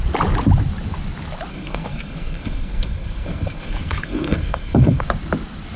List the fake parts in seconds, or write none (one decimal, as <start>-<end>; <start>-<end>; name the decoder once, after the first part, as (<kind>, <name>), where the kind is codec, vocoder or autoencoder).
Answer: 1.5-5.0 (codec, SNAC)